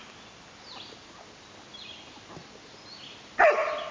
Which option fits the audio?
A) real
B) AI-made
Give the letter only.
A